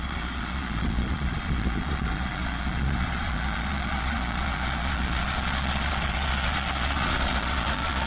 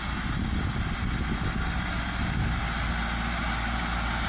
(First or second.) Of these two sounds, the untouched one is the second